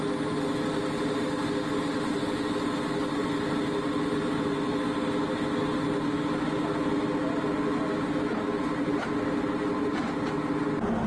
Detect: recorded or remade recorded